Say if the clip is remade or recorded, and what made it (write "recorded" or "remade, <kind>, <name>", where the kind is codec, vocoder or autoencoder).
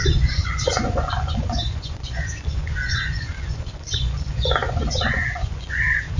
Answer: remade, vocoder, Vocos